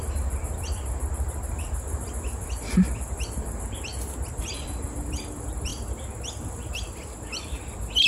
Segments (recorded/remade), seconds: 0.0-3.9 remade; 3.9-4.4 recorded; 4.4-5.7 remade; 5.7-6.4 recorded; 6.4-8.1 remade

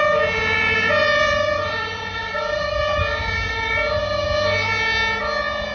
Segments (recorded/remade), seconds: 0.0-1.0 recorded; 1.0-2.8 remade; 2.8-5.7 recorded

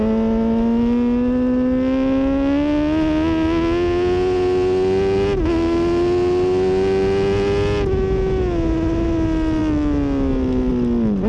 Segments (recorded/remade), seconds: 0.0-11.3 recorded